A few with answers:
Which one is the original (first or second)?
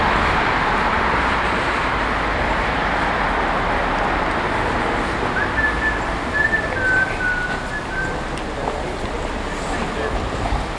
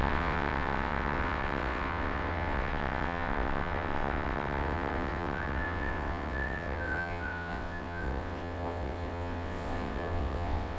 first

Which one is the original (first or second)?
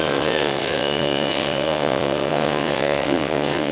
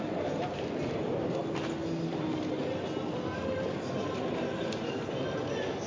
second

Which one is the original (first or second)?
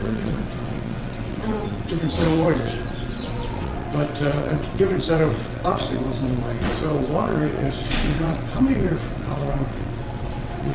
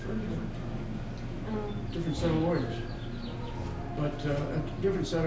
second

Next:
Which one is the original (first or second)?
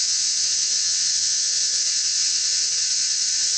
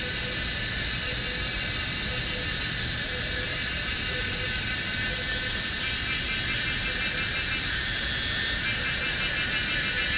second